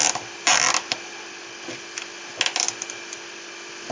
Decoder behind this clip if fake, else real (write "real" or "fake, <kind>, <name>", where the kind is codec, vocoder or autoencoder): real